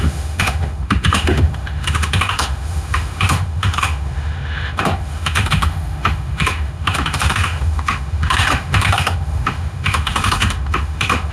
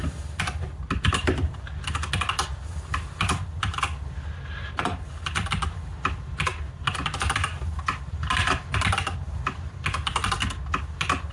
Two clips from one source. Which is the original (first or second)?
second